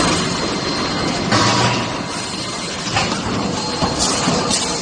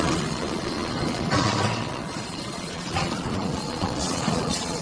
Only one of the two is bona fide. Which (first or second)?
first